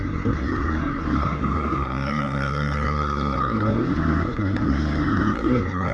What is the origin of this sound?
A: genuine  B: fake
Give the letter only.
B